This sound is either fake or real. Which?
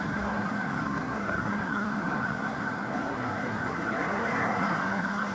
fake